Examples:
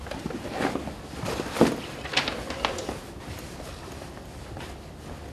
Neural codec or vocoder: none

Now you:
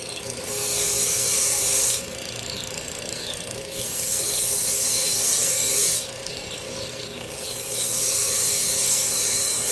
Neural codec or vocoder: codec, SNAC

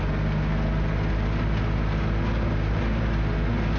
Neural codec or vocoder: none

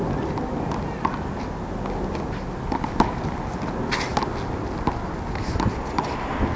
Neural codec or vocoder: none